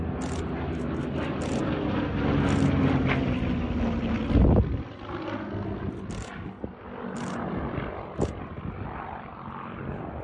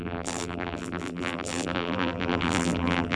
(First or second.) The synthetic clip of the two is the second